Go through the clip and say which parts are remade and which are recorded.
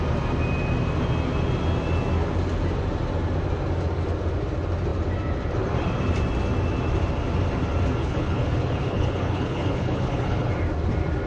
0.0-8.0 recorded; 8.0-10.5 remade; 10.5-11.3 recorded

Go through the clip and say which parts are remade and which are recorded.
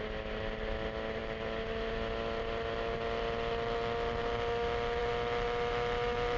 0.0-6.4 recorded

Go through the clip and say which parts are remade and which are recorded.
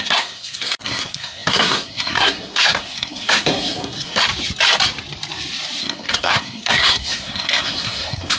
0.0-4.3 remade; 4.3-5.8 recorded; 5.8-8.4 remade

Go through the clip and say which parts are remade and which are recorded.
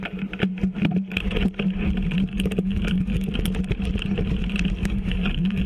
0.0-2.3 recorded; 2.3-3.3 remade; 3.3-4.8 recorded; 4.8-5.7 remade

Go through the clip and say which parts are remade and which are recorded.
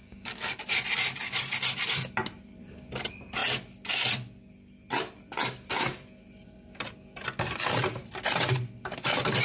0.0-0.6 remade; 0.6-9.4 recorded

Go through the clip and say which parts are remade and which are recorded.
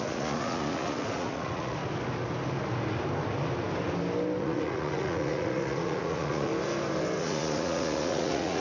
0.0-1.8 remade; 1.8-4.4 recorded; 4.4-6.5 remade; 6.5-7.2 recorded; 7.2-8.6 remade